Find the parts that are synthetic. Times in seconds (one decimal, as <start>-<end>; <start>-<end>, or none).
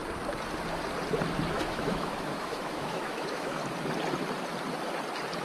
1.5-3.6